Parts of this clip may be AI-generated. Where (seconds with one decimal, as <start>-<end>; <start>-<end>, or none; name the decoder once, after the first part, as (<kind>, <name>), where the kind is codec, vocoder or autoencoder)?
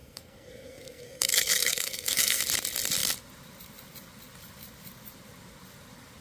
0.0-2.4 (codec, SNAC)